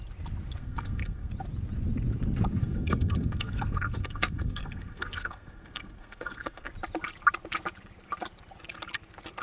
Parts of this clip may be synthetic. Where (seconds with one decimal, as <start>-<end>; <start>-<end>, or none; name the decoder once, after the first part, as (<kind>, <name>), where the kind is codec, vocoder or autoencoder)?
0.6-1.3 (codec, SNAC); 2.6-6.7